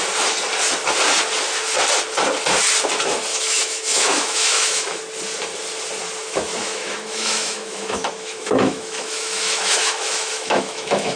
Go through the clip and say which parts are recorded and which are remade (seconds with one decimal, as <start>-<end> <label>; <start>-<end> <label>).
0.0-3.3 recorded; 3.3-5.0 remade; 5.0-6.2 recorded; 6.2-11.2 remade